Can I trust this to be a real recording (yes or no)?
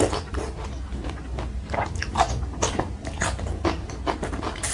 yes